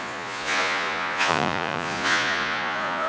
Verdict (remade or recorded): remade